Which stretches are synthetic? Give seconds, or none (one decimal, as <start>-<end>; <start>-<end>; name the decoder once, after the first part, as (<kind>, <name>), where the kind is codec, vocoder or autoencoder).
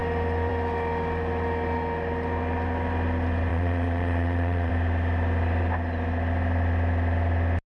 3.5-4.7 (vocoder, Vocos)